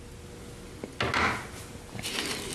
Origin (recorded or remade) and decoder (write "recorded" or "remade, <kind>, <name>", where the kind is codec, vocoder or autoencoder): recorded